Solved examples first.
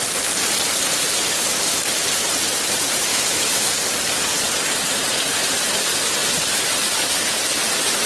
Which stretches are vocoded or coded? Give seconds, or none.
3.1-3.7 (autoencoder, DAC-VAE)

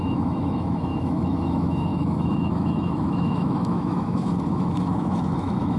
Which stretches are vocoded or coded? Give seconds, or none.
0.0-5.8 (autoencoder, DAC-VAE)

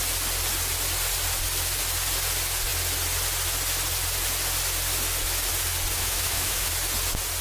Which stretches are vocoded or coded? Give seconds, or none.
5.9-6.7 (autoencoder, DAC-VAE)

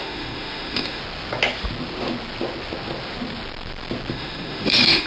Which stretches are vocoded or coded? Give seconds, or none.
0.0-1.0 (autoencoder, DAC-VAE); 4.1-5.1

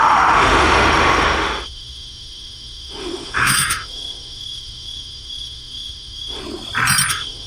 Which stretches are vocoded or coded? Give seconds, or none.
0.0-6.4 (autoencoder, DAC-VAE); 7.1-7.5

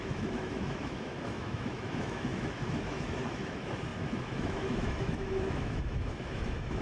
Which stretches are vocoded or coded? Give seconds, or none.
0.0-6.8 (autoencoder, DAC-VAE)

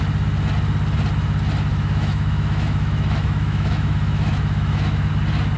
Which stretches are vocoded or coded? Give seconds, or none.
1.7-5.1 (autoencoder, DAC-VAE)

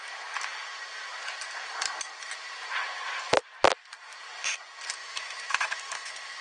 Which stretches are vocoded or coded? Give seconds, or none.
5.0-6.4 (autoencoder, DAC-VAE)